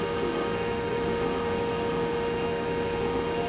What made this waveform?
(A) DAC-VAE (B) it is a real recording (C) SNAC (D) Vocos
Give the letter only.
A